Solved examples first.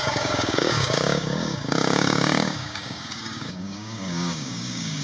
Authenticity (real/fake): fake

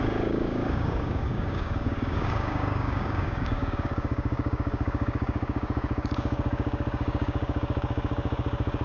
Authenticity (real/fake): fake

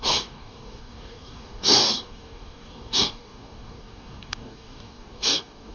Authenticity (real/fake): fake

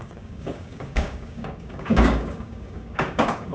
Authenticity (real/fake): fake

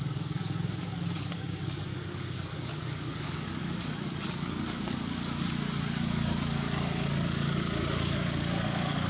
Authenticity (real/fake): fake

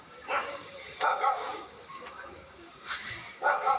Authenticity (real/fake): fake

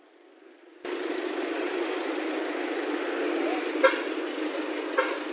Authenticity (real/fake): real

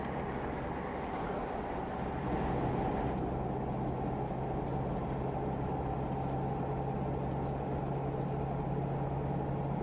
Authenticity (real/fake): real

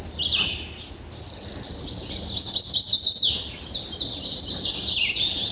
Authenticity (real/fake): real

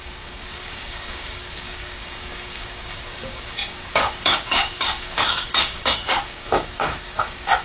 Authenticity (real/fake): fake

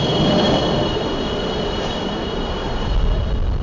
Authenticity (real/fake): real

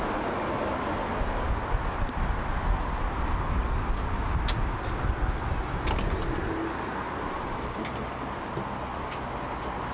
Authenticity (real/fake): real